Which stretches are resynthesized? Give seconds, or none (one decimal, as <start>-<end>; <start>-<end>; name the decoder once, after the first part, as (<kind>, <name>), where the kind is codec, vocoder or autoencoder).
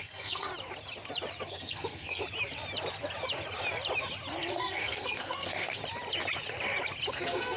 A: 0.0-0.5 (codec, SNAC); 1.5-2.2; 4.5-5.8; 7.1-7.6